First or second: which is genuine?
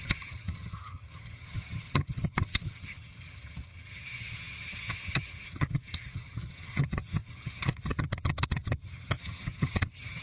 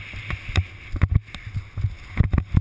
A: second